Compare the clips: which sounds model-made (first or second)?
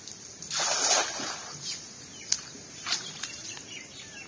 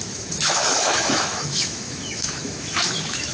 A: second